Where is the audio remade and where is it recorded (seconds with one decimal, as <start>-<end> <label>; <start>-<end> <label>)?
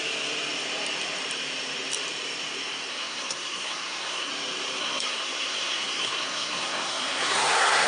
0.0-2.9 recorded; 2.9-4.3 remade; 4.3-4.8 recorded; 4.8-7.9 remade